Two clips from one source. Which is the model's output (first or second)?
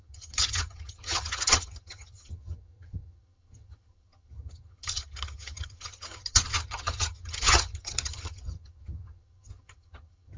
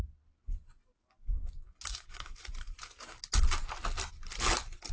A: first